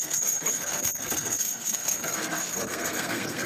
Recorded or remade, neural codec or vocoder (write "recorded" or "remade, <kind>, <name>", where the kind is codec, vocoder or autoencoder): remade, codec, SNAC